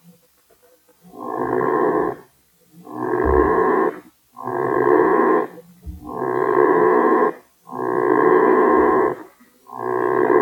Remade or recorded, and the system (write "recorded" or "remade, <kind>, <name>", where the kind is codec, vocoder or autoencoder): recorded